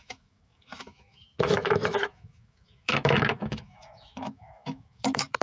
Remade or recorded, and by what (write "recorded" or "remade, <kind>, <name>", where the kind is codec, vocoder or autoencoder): remade, autoencoder, DAC-VAE